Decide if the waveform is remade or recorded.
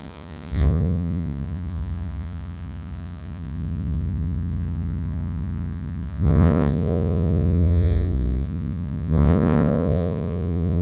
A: remade